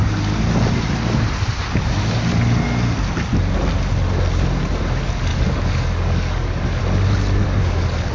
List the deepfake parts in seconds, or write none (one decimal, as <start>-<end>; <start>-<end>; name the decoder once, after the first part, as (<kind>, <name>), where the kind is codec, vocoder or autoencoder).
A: 5.3-6.8 (codec, DAC); 7.4-8.1